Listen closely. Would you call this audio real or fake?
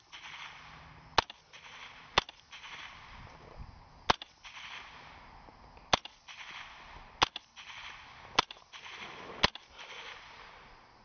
real